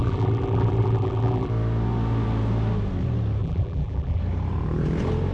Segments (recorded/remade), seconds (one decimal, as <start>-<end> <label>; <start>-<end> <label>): 0.0-1.5 remade; 1.5-3.4 recorded; 3.4-4.2 remade; 4.2-5.3 recorded